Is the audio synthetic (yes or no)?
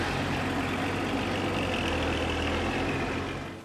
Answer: no